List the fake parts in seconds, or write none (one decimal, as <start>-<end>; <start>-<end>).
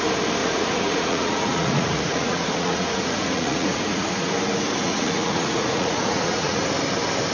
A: 0.4-4.3; 4.8-6.6